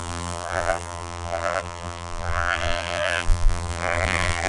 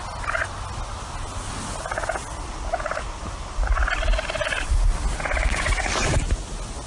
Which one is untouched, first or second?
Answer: second